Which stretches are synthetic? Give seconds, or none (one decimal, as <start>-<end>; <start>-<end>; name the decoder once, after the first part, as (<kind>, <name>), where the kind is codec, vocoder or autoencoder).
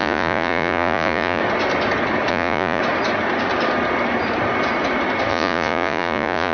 0.0-1.4 (vocoder, Vocos); 2.3-2.8; 5.3-6.5